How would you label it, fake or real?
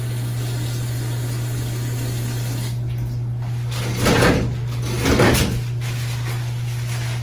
real